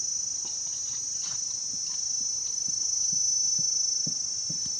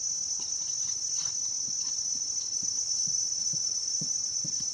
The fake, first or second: second